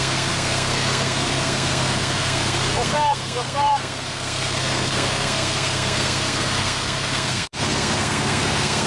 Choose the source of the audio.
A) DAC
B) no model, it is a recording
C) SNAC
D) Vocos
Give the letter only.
C